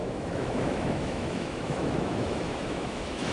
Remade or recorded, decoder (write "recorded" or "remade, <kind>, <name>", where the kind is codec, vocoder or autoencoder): remade, autoencoder, DAC-VAE